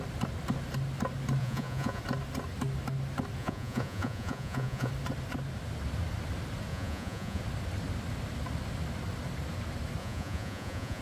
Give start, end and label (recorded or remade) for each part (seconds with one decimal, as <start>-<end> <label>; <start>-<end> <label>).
0.0-1.4 recorded; 1.4-2.0 remade; 2.0-3.4 recorded; 3.4-4.9 remade; 4.9-6.7 recorded; 6.7-7.4 remade; 7.4-10.0 recorded; 10.0-11.0 remade